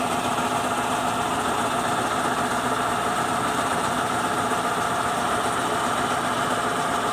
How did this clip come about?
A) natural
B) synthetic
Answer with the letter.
A